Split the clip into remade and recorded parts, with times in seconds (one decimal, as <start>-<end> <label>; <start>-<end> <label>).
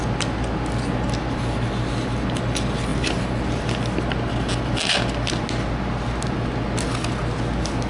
0.0-7.9 recorded